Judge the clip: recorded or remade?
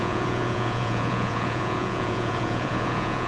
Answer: remade